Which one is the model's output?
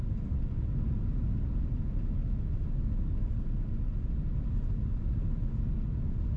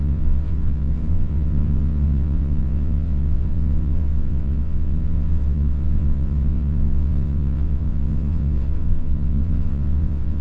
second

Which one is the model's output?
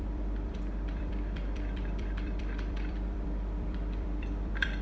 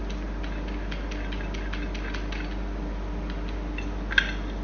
first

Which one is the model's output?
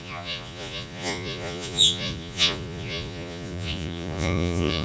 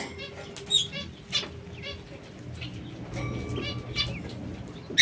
first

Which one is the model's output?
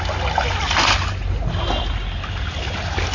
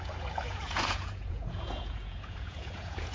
second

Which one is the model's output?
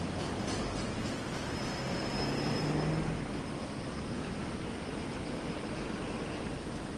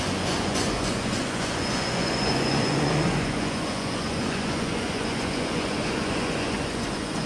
second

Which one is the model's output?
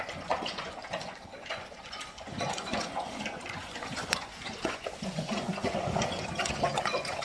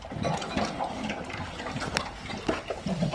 first